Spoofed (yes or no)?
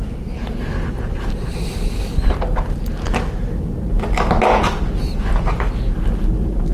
no